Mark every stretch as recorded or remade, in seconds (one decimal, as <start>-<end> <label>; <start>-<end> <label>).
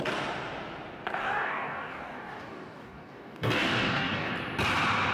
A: 0.0-1.2 recorded; 1.2-4.3 remade; 4.3-5.1 recorded